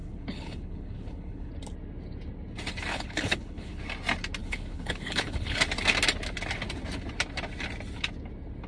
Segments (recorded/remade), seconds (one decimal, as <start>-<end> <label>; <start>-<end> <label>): 0.0-1.5 remade; 1.5-2.9 recorded; 2.9-3.8 remade; 3.8-4.4 recorded; 4.4-5.6 remade; 5.6-8.7 recorded